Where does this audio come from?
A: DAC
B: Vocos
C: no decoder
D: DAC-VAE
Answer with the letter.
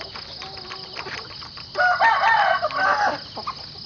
C